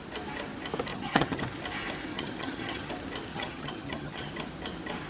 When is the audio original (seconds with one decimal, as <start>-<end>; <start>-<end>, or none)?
0.0-0.9; 1.4-2.1; 2.9-3.3; 4.3-5.1